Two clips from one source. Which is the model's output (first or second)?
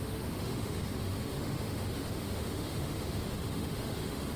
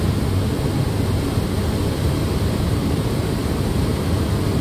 first